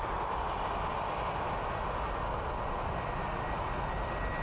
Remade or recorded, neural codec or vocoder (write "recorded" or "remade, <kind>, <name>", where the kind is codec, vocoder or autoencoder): recorded